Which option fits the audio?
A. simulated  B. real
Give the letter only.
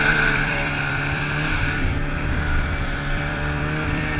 A